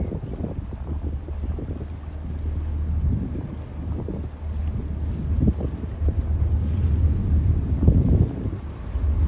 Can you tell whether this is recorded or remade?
recorded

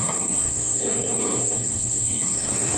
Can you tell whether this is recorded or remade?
remade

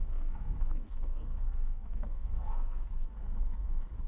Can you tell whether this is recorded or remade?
remade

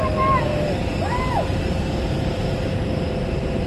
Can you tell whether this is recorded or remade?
recorded